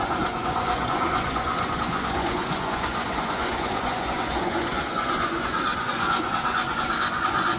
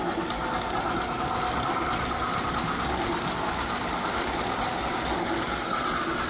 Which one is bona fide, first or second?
second